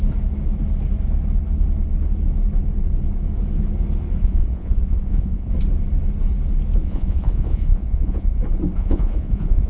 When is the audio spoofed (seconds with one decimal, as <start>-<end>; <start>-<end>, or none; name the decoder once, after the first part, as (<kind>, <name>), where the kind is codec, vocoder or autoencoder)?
4.2-5.5 (vocoder, Vocos); 6.8-8.4; 8.8-9.7